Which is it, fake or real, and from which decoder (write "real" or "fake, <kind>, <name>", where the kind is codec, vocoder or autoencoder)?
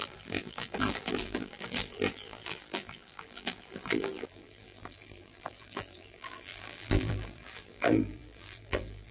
fake, vocoder, BigVGAN v2